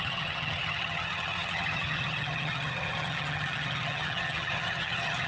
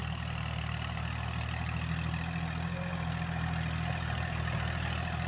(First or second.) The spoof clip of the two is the first